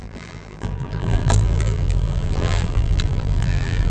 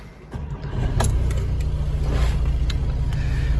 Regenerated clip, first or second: first